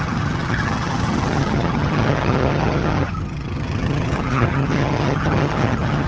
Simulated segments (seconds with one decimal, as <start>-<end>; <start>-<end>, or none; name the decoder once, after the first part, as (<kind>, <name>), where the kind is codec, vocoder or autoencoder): 0.0-6.1 (vocoder, HiFi-GAN)